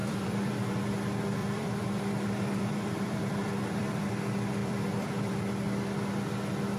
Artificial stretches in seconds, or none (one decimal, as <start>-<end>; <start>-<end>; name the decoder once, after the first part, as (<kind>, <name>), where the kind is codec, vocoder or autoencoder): 0.0-0.7 (vocoder, BigVGAN v2); 1.4-4.1; 4.6-5.6

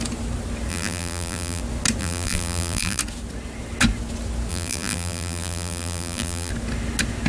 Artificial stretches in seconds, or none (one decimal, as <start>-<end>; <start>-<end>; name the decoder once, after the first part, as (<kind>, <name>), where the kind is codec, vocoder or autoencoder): 0.7-1.6 (vocoder, BigVGAN v2); 2.0-3.0; 4.5-6.5

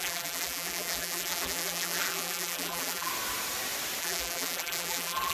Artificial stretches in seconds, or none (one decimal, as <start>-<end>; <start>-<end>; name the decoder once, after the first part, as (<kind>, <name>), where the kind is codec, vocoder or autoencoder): 0.0-3.1 (vocoder, BigVGAN v2); 4.0-5.3

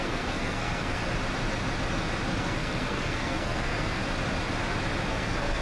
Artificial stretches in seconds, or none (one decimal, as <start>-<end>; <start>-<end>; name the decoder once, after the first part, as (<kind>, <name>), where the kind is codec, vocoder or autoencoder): 0.0-1.0 (codec, SNAC); 2.3-4.0; 5.1-5.6

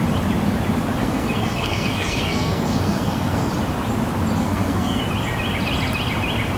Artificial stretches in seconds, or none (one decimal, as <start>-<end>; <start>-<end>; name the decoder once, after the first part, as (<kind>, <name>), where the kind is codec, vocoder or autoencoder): 1.0-3.5 (codec, SNAC); 4.4-5.0

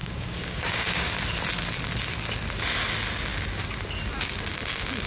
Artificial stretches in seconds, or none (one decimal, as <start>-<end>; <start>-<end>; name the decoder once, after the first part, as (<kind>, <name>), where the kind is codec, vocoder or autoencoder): 0.0-1.1 (codec, DAC)